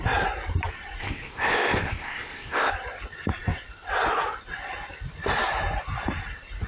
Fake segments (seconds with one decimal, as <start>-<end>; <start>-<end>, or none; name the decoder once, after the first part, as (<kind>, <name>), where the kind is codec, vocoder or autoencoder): 1.0-2.7 (codec, ZipCodec)